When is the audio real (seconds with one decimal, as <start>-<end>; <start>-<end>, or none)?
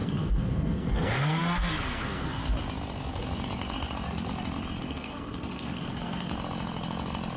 2.4-4.8; 6.3-7.4